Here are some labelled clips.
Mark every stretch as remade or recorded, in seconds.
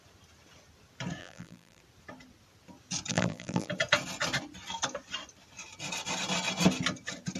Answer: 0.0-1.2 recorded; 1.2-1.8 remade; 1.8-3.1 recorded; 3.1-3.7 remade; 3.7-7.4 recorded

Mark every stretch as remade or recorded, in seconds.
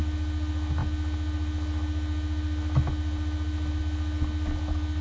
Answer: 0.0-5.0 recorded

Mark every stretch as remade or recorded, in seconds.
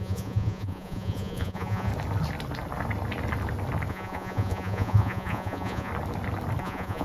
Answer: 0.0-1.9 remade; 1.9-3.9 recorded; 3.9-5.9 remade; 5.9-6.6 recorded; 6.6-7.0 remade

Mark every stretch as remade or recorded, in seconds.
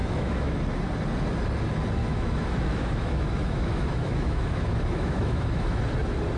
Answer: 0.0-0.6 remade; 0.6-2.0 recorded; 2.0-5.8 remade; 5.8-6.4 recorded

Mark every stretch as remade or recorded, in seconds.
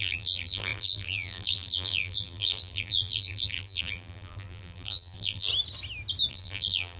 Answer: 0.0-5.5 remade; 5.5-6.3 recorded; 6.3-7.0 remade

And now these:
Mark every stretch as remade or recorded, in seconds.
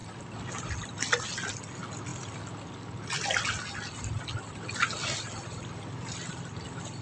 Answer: 0.0-7.0 recorded